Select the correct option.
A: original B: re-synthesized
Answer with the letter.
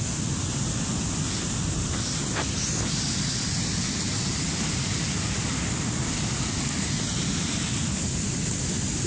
A